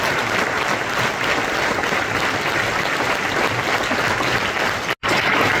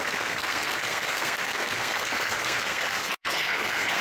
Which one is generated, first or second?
second